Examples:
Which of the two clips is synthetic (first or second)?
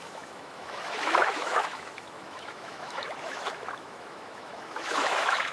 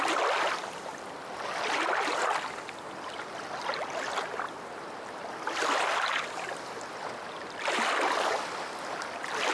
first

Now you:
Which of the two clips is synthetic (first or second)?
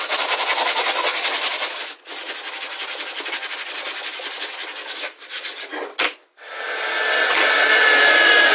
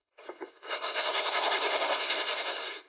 second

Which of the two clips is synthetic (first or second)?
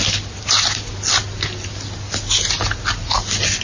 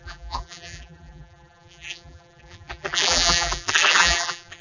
second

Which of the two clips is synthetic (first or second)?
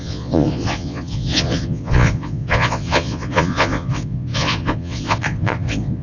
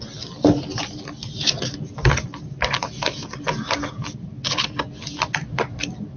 first